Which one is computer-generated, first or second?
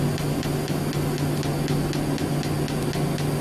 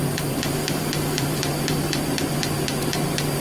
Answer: second